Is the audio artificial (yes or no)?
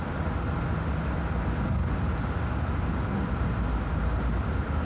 no